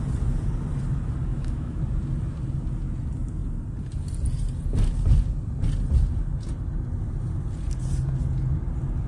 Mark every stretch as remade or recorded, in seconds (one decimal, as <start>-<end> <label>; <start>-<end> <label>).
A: 0.0-1.3 recorded; 1.3-1.8 remade; 1.8-9.1 recorded